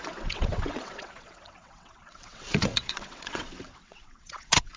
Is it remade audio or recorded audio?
remade